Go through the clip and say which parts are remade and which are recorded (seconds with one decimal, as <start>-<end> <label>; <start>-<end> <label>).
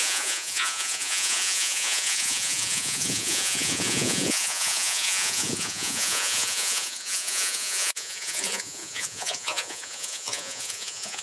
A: 0.0-11.2 remade